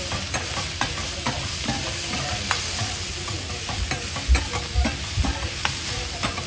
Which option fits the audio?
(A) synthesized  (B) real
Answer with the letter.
B